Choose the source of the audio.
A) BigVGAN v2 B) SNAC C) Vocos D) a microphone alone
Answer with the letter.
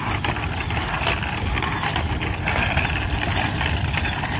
D